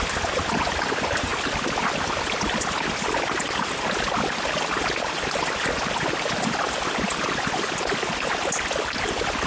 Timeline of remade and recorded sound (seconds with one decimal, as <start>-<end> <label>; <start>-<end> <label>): 0.0-9.5 recorded

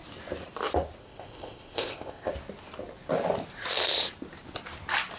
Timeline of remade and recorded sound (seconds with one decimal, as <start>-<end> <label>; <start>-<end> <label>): 0.0-1.0 recorded; 1.0-2.3 remade; 2.3-5.2 recorded

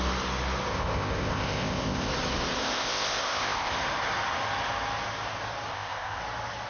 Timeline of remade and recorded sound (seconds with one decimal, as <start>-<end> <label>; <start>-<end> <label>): 0.0-0.7 recorded; 0.7-2.1 remade; 2.1-2.6 recorded; 2.6-3.7 remade; 3.7-5.7 recorded; 5.7-6.2 remade; 6.2-6.7 recorded

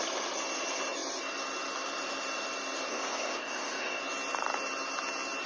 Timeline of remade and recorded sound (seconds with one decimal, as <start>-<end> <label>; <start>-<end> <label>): 0.0-2.9 recorded; 2.9-4.0 remade; 4.0-5.5 recorded

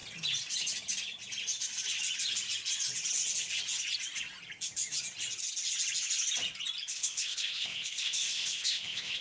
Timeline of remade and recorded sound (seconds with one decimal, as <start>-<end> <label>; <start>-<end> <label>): 0.0-6.9 recorded; 6.9-9.2 remade

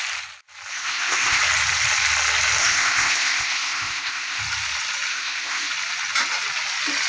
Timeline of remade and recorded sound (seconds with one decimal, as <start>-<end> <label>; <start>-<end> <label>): 0.0-0.7 recorded; 0.7-1.4 remade; 1.4-2.6 recorded; 2.6-4.4 remade; 4.4-5.1 recorded; 5.1-5.7 remade; 5.7-7.1 recorded